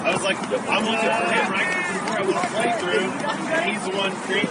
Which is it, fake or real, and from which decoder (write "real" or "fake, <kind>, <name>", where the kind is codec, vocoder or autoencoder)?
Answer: fake, vocoder, BigVGAN v2